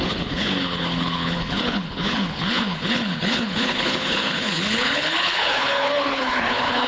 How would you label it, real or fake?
fake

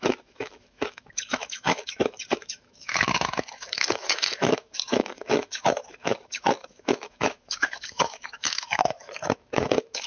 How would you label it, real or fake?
fake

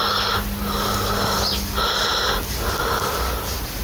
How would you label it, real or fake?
real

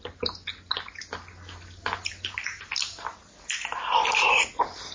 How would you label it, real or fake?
real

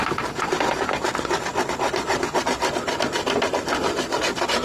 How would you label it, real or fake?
real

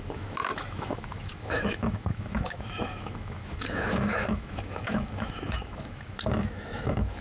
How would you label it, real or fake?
fake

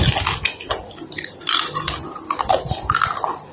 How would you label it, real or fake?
real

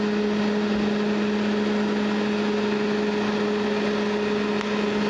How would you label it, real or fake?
real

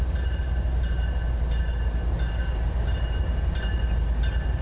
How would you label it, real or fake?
real